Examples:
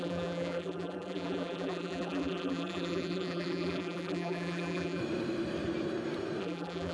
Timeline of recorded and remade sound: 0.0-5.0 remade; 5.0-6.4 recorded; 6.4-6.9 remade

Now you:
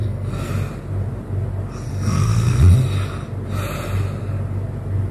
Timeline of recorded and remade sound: 0.0-0.5 remade; 0.5-1.9 recorded; 1.9-2.6 remade; 2.6-5.1 recorded

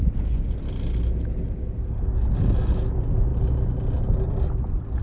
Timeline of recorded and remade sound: 0.0-5.0 recorded

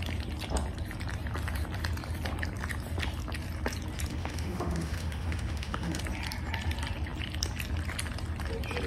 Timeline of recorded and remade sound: 0.0-4.1 recorded; 4.1-6.0 remade; 6.0-8.9 recorded

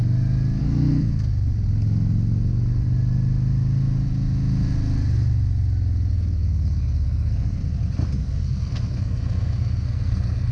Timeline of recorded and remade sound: 0.0-0.6 recorded; 0.6-1.3 remade; 1.3-6.1 recorded; 6.1-7.6 remade; 7.6-8.1 recorded; 8.1-10.5 remade